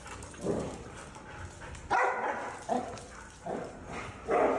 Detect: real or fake real